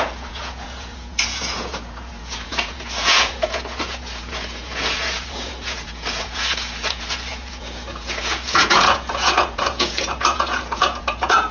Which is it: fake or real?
fake